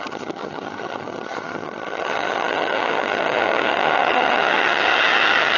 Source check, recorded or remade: remade